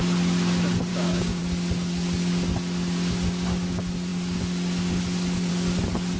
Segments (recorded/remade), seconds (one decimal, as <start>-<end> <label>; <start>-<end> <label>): 0.0-0.9 recorded; 0.9-1.4 remade; 1.4-6.2 recorded